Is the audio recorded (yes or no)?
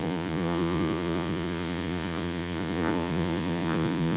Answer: no